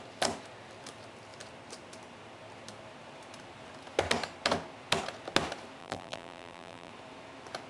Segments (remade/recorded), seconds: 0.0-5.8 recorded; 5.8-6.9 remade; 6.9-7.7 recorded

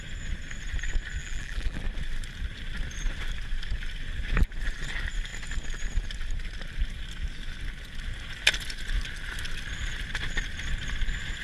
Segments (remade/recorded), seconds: 0.0-1.2 recorded; 1.2-1.8 remade; 1.8-11.4 recorded

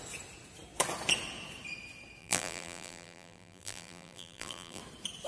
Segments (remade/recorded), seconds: 0.0-2.2 recorded; 2.2-4.8 remade; 4.8-5.3 recorded

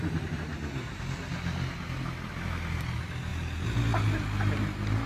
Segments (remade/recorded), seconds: 0.0-0.5 remade; 0.5-2.8 recorded; 2.8-5.1 remade